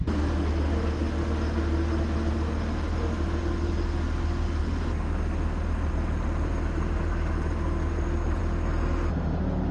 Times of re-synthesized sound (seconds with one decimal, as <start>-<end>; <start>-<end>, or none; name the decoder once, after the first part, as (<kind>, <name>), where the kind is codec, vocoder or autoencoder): none